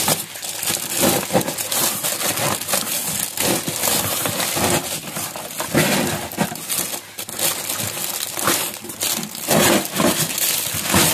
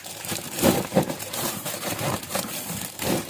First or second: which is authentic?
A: first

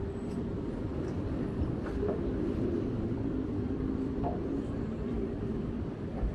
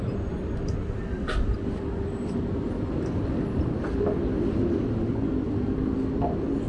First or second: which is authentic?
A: second